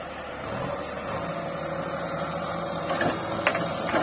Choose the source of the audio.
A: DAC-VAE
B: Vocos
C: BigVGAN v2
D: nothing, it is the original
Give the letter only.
D